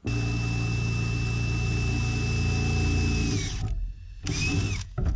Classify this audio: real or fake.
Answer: real